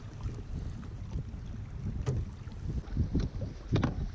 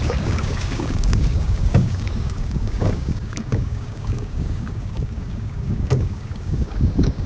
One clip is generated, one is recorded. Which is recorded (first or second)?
first